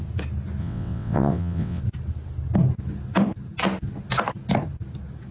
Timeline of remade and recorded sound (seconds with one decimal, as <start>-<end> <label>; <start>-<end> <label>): 0.0-0.6 recorded; 0.6-1.8 remade; 1.8-5.3 recorded